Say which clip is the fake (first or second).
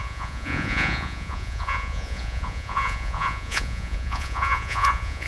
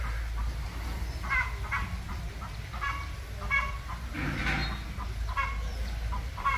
first